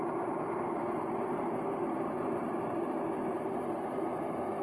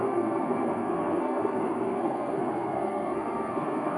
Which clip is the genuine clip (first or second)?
first